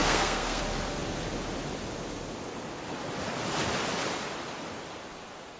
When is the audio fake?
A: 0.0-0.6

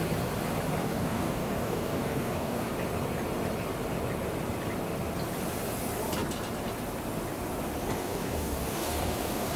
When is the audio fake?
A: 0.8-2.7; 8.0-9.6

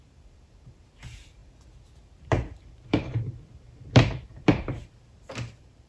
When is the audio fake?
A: 0.0-5.9

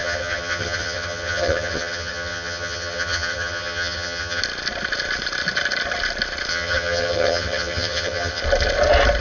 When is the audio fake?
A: 0.0-4.4; 6.5-8.4

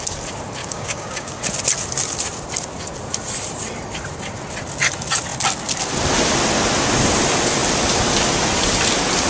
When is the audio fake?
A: 0.6-1.3

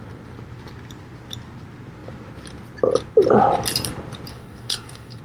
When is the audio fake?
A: 4.3-5.2

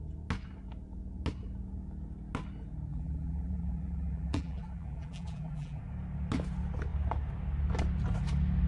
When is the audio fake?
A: 2.9-5.8

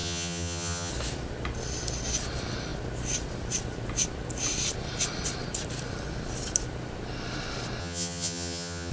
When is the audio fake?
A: 0.0-0.9; 7.8-8.9